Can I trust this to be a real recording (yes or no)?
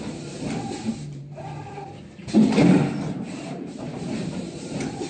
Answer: no